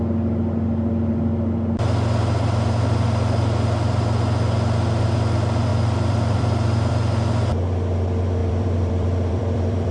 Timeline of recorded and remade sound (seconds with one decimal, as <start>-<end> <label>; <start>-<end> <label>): 0.0-5.7 recorded; 5.7-6.9 remade; 6.9-8.4 recorded; 8.4-9.9 remade